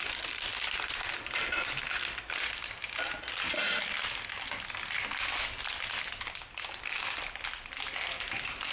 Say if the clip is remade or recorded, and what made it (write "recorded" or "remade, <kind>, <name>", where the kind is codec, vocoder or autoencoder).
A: recorded